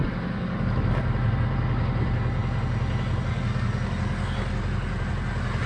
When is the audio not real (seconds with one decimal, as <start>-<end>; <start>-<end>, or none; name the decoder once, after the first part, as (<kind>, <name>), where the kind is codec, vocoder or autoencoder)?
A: none